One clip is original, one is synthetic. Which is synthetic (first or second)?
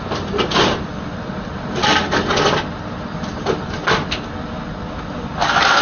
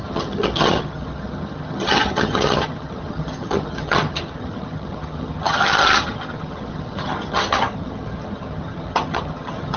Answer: second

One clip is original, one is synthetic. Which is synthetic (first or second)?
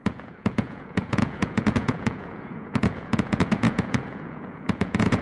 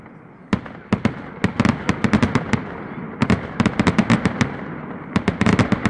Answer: first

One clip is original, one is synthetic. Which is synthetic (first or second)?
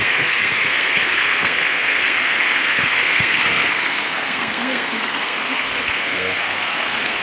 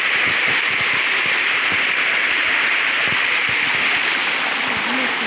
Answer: first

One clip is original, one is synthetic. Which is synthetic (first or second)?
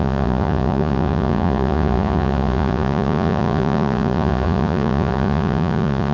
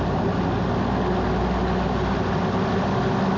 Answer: first